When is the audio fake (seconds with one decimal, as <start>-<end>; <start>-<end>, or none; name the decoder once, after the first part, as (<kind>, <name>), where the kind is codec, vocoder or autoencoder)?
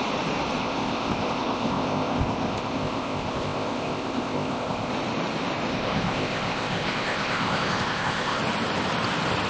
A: 0.6-4.9 (codec, ZipCodec); 5.7-8.4